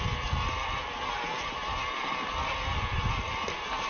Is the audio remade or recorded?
recorded